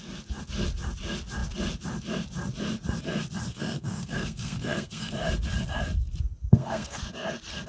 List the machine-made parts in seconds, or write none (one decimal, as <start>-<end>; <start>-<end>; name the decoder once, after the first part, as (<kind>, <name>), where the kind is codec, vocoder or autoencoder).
3.5-5.1 (codec, SNAC); 6.4-7.0

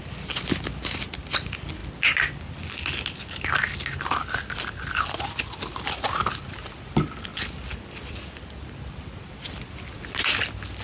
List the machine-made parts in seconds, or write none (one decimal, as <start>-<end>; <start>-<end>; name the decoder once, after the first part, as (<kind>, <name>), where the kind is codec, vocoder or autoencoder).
none